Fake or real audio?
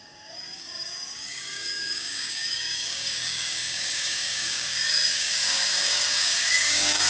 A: fake